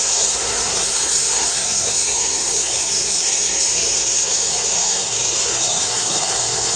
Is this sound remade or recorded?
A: remade